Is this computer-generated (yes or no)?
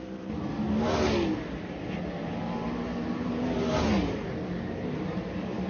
no